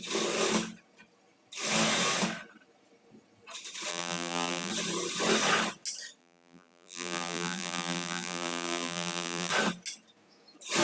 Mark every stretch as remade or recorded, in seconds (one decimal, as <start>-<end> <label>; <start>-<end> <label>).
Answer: 0.0-3.9 recorded; 3.9-4.7 remade; 4.7-6.2 recorded; 6.2-9.5 remade; 9.5-10.8 recorded